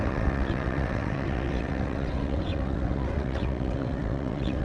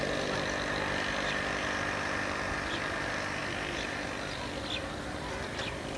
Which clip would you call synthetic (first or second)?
first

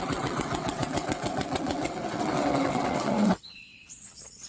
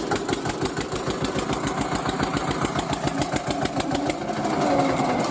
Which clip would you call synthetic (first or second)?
first